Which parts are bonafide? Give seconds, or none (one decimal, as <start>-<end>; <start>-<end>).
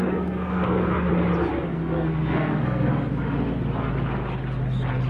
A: 1.1-1.7; 2.9-5.1